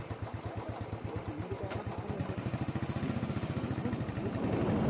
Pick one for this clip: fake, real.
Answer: real